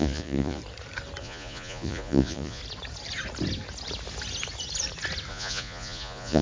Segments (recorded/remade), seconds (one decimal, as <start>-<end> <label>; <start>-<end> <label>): 0.0-0.6 remade; 0.6-1.2 recorded; 1.2-2.6 remade; 2.6-5.3 recorded; 5.3-6.4 remade